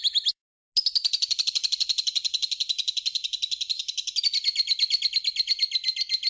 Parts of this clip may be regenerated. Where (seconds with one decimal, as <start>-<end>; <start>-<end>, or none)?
none

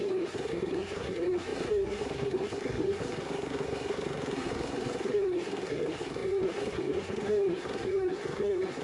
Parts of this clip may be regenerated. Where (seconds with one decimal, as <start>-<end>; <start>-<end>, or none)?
0.0-8.8

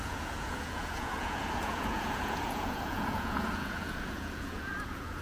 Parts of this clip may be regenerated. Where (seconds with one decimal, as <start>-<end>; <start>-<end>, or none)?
0.0-5.2

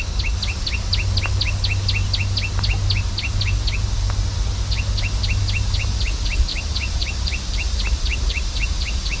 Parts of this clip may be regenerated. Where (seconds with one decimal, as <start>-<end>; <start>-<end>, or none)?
6.5-9.2